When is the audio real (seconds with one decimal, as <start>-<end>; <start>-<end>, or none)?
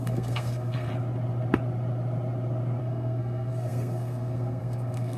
0.9-2.8